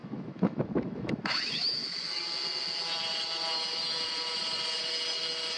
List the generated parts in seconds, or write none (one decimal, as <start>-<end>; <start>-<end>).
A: 0.0-2.2